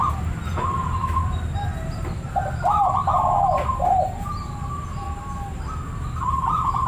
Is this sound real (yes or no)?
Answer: yes